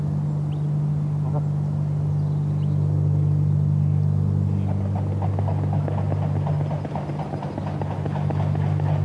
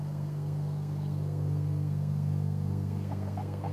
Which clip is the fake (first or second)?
second